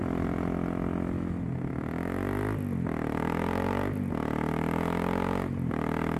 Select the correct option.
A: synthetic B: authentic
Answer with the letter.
B